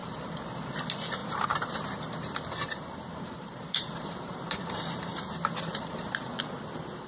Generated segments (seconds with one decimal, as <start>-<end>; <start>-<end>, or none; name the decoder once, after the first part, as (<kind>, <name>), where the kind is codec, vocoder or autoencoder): 0.0-0.5 (vocoder, BigVGAN v2); 1.2-4.6; 5.1-6.4